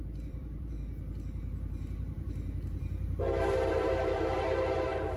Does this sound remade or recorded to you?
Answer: remade